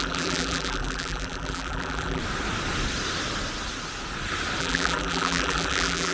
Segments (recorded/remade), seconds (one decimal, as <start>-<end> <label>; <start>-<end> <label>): 0.0-2.2 remade; 2.2-4.6 recorded; 4.6-6.1 remade